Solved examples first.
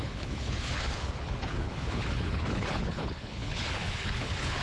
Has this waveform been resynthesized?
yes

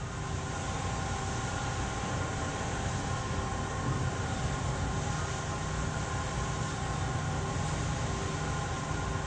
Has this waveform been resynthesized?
no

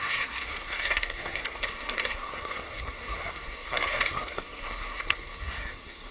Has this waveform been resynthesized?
yes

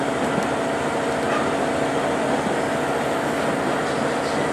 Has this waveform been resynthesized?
no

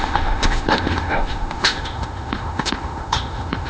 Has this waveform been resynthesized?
yes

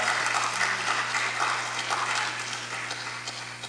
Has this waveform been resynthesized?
no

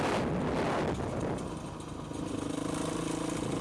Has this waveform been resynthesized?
no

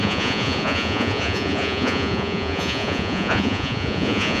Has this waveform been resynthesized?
yes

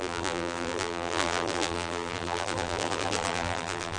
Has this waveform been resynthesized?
yes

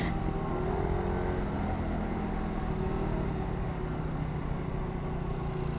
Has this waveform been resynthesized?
no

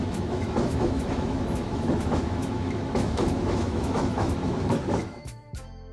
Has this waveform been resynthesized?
yes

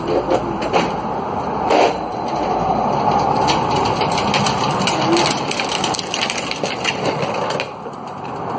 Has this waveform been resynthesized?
no